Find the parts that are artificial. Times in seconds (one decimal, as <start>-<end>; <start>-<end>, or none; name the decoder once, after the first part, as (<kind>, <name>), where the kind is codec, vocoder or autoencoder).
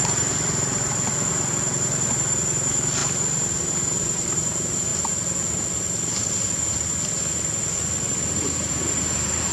0.0-4.9 (vocoder, BigVGAN v2); 8.7-9.5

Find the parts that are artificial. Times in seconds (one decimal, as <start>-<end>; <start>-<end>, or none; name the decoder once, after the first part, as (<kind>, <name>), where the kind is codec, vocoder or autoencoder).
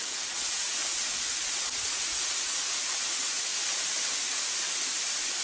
0.0-0.8 (vocoder, Vocos); 1.8-3.5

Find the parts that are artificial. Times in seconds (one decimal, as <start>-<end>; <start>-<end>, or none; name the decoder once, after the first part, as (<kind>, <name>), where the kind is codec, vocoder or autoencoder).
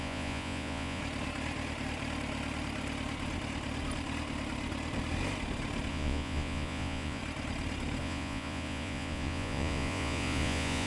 0.0-1.0 (vocoder, Vocos); 5.9-7.2; 8.0-10.9